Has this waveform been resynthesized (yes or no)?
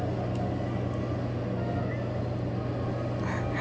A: no